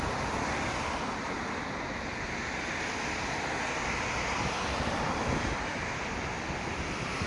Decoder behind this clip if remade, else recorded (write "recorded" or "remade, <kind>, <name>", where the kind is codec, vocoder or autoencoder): recorded